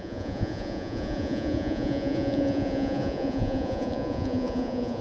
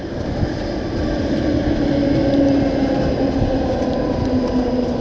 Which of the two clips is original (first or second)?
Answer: second